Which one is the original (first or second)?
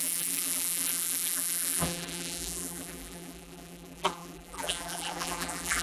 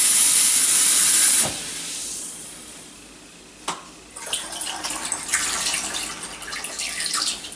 second